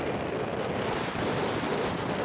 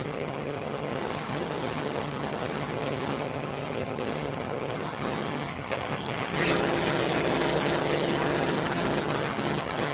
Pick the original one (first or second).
first